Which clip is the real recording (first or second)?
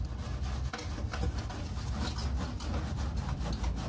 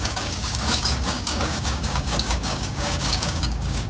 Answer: first